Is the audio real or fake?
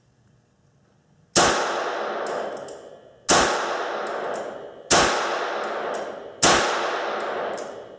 real